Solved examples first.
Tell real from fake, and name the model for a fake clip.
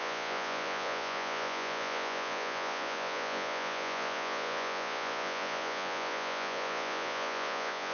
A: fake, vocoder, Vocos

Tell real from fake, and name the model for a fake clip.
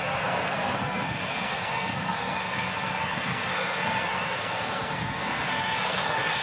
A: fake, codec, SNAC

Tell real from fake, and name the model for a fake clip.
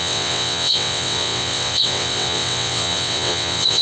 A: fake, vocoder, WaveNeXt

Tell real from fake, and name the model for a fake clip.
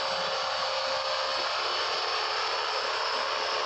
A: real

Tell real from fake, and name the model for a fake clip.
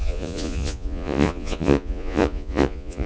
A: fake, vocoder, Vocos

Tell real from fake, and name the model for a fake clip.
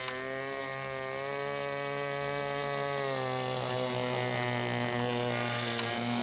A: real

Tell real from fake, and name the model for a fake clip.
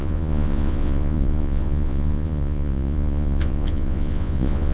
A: fake, vocoder, Vocos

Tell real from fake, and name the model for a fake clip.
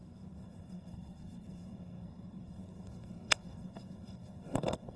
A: fake, codec, SNAC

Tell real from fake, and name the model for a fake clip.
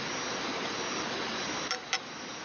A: real